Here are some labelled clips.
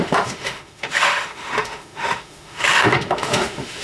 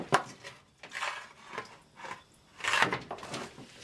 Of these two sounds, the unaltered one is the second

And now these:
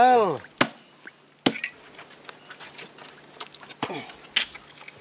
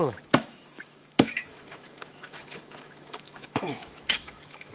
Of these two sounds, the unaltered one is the first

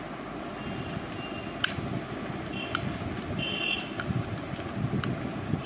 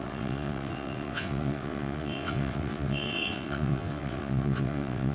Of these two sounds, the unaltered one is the first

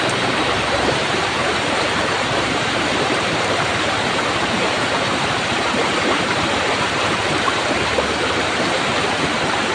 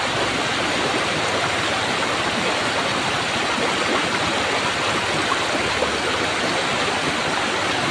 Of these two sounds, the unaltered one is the second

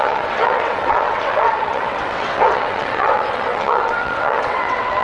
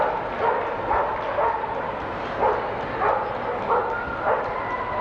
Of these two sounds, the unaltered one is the second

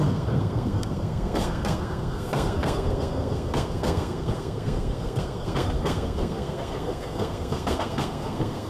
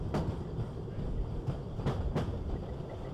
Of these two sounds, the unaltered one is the second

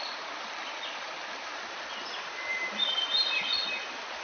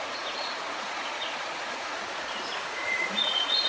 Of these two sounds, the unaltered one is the first